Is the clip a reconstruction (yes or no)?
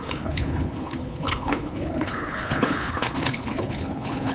yes